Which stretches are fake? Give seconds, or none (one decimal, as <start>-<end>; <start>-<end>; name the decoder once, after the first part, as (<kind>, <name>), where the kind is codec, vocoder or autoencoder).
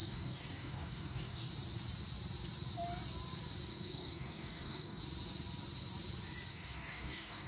0.0-1.5 (codec, DAC); 3.7-5.0; 6.5-7.5